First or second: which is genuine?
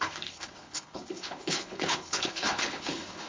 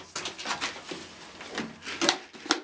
second